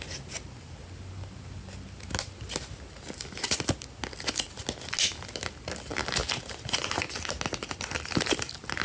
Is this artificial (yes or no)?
no